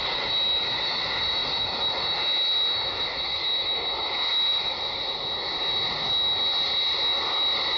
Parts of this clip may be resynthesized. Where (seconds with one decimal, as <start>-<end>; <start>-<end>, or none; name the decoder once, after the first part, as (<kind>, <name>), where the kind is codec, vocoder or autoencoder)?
none